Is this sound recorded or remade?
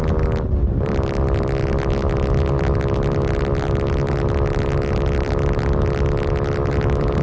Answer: recorded